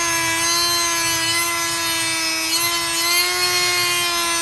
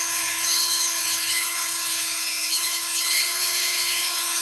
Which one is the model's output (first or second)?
second